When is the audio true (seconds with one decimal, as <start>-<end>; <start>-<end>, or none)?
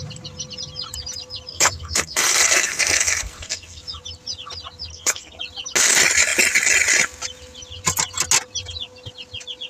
0.0-1.5; 3.8-4.9; 5.4-9.7